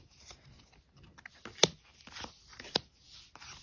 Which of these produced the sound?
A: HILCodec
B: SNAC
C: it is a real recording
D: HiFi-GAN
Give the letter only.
C